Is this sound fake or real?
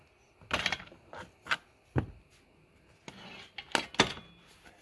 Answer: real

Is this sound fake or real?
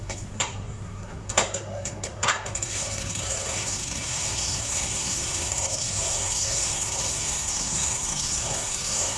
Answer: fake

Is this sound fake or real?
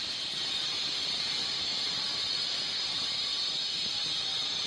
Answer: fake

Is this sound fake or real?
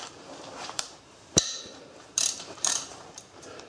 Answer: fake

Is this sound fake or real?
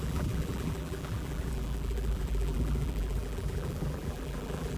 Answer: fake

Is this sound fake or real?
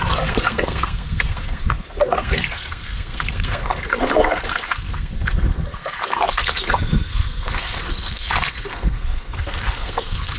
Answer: fake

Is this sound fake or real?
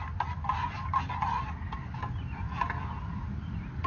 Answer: real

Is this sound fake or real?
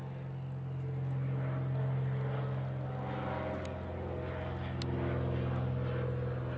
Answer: real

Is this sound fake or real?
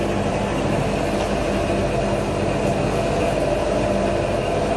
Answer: real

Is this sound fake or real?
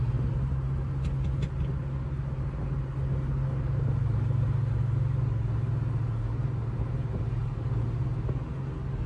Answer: real